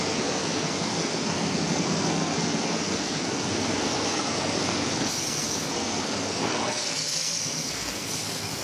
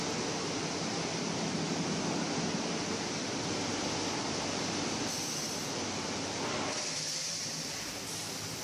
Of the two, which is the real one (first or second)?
second